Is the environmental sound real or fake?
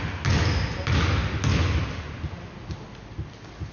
real